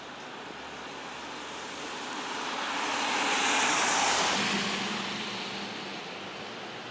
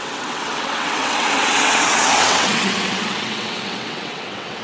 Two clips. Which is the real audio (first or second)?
first